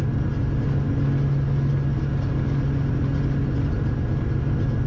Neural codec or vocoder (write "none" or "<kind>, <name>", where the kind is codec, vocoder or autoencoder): none